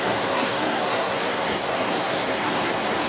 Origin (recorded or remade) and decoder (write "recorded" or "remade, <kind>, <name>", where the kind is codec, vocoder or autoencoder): remade, codec, SNAC